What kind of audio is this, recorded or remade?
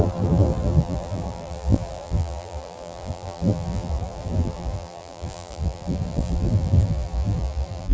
remade